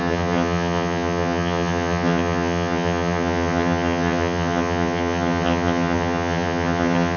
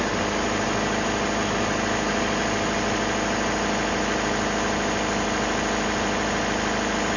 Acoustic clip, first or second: second